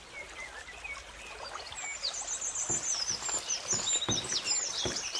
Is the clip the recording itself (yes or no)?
yes